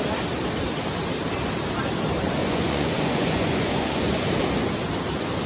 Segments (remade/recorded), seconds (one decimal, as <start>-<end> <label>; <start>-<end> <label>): 0.0-2.4 recorded; 2.4-4.3 remade; 4.3-5.5 recorded